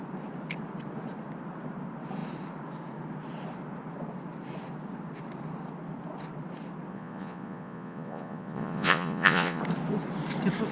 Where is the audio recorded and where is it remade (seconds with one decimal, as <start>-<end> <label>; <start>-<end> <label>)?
0.0-6.9 recorded; 6.9-9.6 remade; 9.6-10.7 recorded